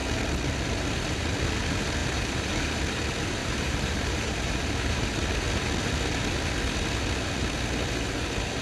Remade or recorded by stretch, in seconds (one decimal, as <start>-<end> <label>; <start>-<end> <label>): 0.0-2.0 recorded; 2.0-2.7 remade; 2.7-3.4 recorded; 3.4-5.1 remade; 5.1-8.6 recorded